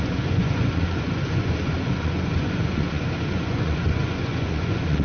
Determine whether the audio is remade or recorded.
remade